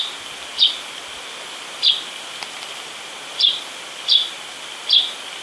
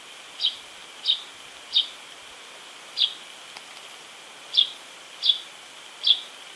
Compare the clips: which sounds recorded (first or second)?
second